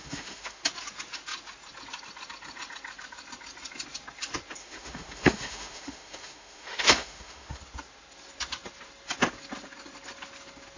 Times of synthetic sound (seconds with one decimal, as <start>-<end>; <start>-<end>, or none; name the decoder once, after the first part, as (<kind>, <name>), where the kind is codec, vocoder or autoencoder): 0.0-0.6 (autoencoder, DAC-VAE); 4.6-7.6